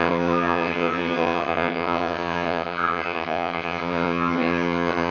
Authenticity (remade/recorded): remade